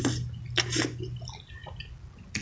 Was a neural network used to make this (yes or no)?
no